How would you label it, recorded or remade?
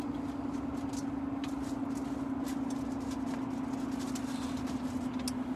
recorded